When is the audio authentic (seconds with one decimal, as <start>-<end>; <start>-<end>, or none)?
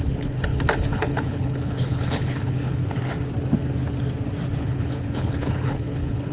2.8-4.6